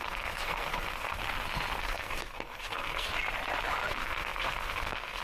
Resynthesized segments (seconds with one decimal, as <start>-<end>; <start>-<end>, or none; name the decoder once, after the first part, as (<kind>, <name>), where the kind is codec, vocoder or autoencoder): 0.0-1.2 (codec, SNAC); 1.8-3.1; 3.9-5.2